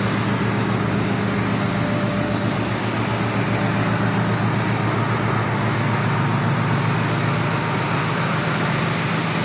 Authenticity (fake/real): real